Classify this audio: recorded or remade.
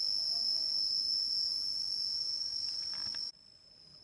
recorded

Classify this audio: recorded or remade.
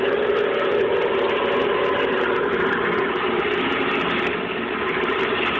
recorded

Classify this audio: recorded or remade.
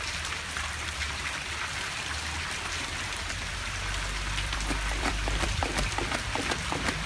remade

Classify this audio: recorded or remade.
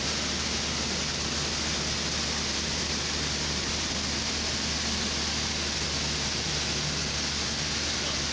recorded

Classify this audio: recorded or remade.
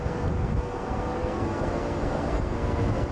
remade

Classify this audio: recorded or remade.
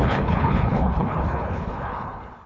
remade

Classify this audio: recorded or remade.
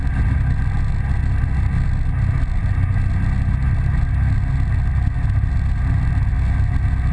recorded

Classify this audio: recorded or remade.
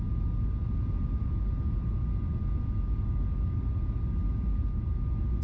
recorded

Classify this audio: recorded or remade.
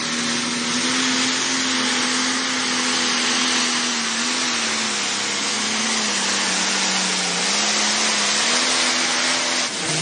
recorded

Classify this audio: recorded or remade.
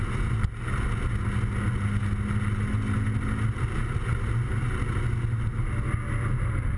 recorded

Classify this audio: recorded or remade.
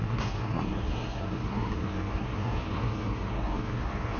remade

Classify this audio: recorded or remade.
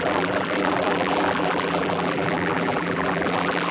remade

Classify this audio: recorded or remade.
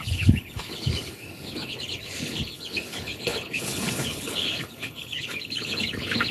remade